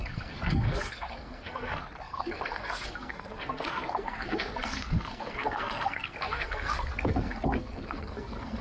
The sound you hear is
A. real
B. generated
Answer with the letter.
B